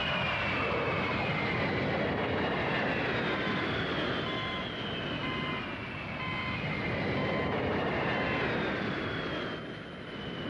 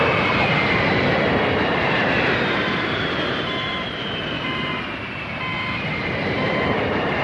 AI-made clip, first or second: second